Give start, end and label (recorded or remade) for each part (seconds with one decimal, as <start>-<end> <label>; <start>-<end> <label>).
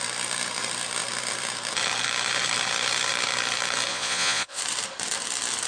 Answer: 0.0-3.9 recorded; 3.9-4.6 remade; 4.6-5.7 recorded